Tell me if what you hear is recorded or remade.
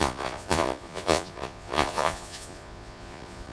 remade